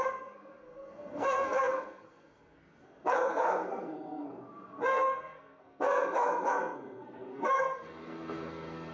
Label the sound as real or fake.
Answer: fake